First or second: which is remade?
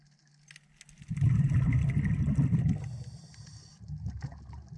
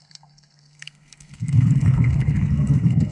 second